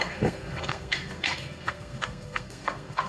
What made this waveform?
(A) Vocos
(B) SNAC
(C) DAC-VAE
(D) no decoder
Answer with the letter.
B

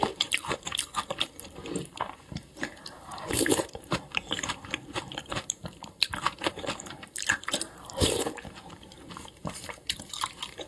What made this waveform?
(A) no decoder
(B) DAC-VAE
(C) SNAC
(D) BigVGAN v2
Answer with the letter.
D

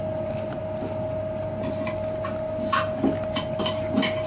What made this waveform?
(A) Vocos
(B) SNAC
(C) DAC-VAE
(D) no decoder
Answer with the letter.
D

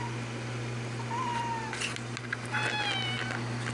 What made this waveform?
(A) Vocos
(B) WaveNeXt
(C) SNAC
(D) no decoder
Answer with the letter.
D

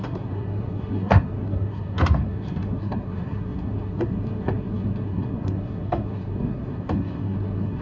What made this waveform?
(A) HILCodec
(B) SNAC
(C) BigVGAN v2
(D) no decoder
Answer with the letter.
B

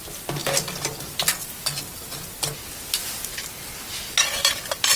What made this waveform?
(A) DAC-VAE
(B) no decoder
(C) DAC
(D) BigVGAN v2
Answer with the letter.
B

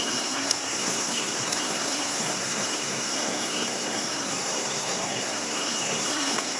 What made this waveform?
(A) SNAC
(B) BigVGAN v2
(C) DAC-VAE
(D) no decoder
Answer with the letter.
A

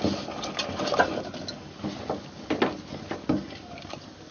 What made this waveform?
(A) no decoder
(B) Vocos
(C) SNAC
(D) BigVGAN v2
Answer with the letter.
A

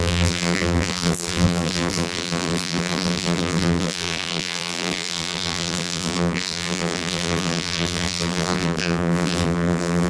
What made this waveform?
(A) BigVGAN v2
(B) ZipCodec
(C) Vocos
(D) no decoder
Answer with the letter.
A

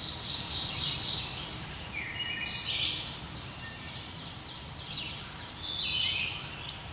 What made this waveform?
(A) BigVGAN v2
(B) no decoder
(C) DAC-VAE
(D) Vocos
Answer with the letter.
B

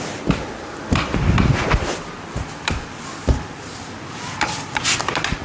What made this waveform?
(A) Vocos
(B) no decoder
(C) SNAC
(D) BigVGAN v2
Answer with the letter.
B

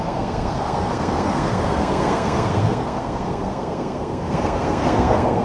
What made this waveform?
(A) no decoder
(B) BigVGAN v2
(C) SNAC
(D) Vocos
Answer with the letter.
C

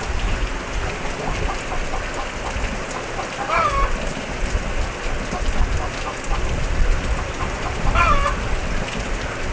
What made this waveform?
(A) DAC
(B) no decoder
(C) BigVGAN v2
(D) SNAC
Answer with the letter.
B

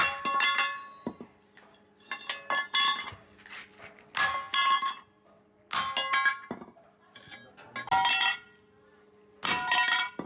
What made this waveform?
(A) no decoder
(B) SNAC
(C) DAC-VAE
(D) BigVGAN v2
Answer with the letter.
A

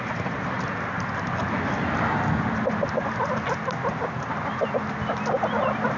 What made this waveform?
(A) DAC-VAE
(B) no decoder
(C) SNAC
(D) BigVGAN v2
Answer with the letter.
B